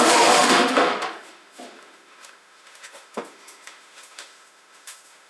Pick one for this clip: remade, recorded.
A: remade